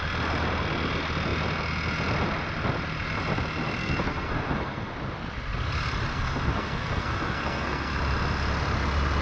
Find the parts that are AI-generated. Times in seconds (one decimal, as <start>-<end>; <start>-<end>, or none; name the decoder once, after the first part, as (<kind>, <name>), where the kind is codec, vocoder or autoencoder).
3.8-4.9 (codec, SNAC); 6.1-7.9